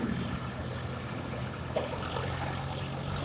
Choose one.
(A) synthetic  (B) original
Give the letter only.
B